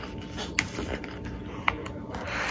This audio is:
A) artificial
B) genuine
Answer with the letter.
B